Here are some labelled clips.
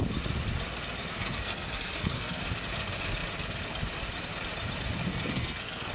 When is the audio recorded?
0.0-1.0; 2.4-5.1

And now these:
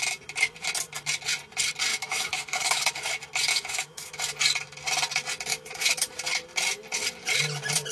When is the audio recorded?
0.0-1.9; 3.1-3.5; 4.2-5.5; 6.1-7.9

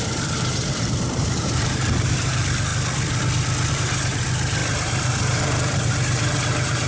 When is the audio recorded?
2.7-3.7

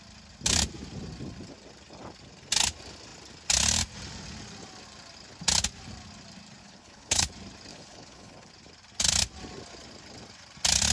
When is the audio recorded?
0.0-6.6; 7.3-7.7; 8.5-10.9

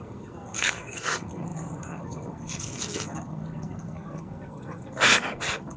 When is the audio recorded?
none

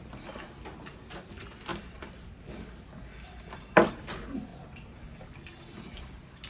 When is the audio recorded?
0.0-1.7; 3.9-6.5

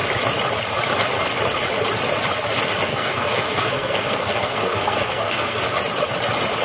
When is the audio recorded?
0.0-2.9; 5.6-6.6

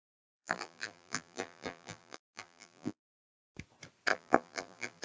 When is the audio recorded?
3.0-4.1